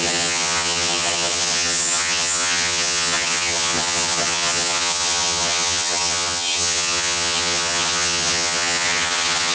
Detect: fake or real fake